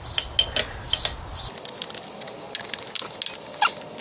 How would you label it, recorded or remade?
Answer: recorded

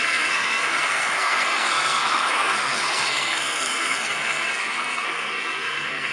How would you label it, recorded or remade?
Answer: remade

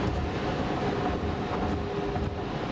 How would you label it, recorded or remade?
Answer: recorded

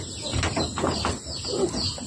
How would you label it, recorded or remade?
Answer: recorded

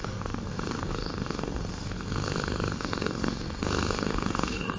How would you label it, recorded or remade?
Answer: remade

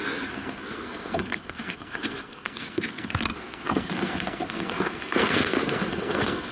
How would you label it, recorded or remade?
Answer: remade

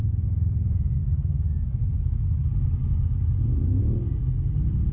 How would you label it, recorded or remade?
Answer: recorded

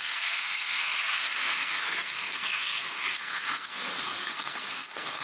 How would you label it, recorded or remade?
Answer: remade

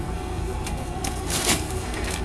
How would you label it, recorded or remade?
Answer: remade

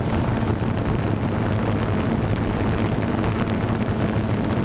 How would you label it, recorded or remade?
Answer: recorded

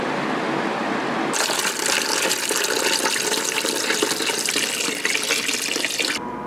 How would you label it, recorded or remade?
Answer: recorded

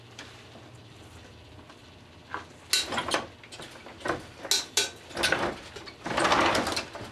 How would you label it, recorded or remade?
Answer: recorded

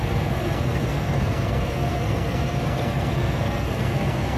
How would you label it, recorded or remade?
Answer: remade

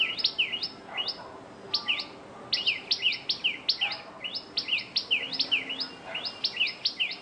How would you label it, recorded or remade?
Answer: recorded